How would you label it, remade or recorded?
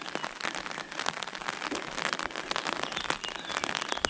recorded